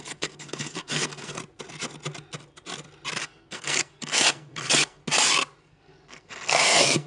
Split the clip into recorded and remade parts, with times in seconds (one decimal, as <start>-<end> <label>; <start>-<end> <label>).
0.0-1.4 remade; 1.4-3.2 recorded; 3.2-5.0 remade; 5.0-5.6 recorded; 5.6-7.1 remade

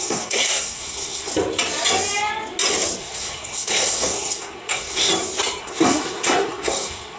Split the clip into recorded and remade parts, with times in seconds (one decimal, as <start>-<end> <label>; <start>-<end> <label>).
0.0-1.3 remade; 1.3-3.0 recorded; 3.0-5.1 remade; 5.1-5.6 recorded; 5.6-7.2 remade

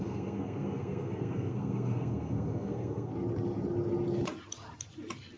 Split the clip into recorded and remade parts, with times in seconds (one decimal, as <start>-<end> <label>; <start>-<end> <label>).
0.0-3.1 remade; 3.1-5.4 recorded

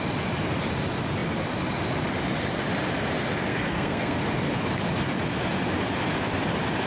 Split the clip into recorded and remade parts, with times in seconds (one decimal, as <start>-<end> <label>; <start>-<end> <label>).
0.0-3.5 recorded; 3.5-4.2 remade; 4.2-6.9 recorded

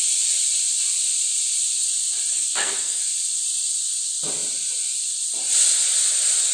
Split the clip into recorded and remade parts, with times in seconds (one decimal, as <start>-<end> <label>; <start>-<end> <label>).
0.0-2.3 recorded; 2.3-3.0 remade; 3.0-6.5 recorded